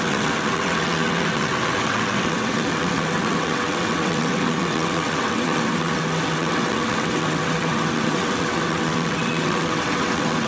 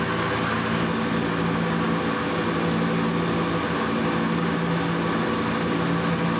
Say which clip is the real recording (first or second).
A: second